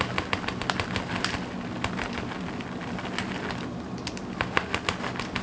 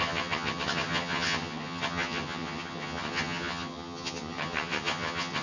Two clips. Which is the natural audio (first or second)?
first